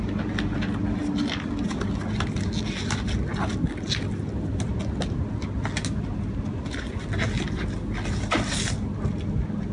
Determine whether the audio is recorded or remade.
recorded